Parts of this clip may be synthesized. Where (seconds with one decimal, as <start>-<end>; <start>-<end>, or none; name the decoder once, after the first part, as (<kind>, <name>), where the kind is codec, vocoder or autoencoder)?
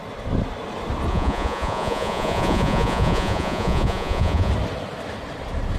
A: 1.1-4.5 (vocoder, Vocos)